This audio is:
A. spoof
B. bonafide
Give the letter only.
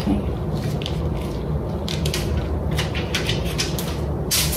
B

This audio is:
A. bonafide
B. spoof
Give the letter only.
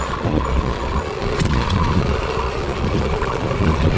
B